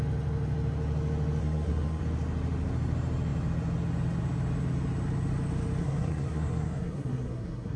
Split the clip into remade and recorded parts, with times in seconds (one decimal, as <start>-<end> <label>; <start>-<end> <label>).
0.0-1.4 recorded; 1.4-2.0 remade; 2.0-5.8 recorded; 5.8-7.8 remade